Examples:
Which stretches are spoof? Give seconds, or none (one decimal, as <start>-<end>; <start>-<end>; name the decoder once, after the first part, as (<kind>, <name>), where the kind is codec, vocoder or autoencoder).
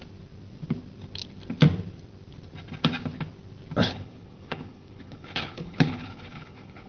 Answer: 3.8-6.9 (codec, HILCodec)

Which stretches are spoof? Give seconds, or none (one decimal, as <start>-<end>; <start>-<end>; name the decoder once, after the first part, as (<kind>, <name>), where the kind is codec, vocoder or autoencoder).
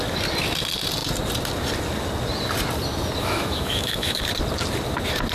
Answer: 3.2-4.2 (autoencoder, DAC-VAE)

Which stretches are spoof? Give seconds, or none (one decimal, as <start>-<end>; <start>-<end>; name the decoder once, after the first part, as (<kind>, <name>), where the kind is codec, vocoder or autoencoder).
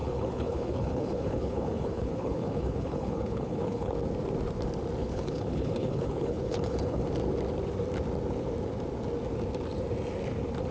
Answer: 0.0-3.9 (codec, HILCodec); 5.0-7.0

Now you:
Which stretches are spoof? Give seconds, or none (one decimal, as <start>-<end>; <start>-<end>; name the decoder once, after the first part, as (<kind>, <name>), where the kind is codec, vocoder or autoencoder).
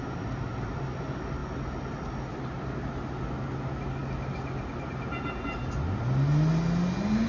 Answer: none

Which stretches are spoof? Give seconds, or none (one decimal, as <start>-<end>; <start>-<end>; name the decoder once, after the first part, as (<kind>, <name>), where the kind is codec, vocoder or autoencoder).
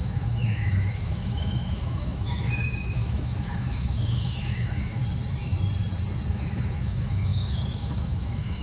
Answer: 0.0-5.0 (autoencoder, DAC-VAE); 6.3-8.6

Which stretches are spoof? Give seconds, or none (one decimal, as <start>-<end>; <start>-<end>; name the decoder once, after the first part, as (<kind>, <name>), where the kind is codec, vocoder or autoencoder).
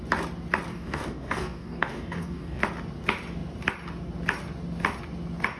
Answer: 0.7-2.6 (codec, DAC)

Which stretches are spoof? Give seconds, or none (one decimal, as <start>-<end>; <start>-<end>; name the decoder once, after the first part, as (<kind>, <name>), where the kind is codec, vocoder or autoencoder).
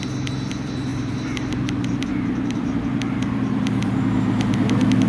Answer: 0.9-4.0 (vocoder, BigVGAN v2)